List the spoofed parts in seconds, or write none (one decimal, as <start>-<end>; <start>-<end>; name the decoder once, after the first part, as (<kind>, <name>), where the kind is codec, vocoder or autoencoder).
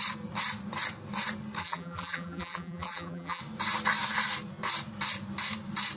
1.6-3.4 (vocoder, BigVGAN v2)